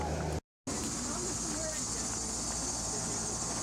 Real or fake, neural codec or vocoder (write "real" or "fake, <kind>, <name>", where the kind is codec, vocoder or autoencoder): real